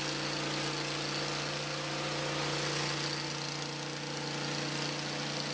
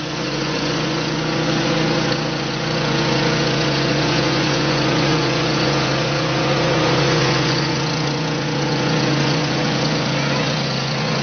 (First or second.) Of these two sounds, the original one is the first